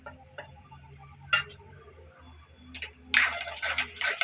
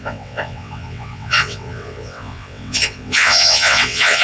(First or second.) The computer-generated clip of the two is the second